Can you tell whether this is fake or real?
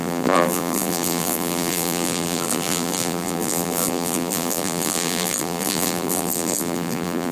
fake